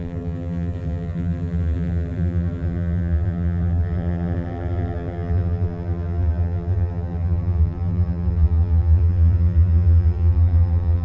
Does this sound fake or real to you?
fake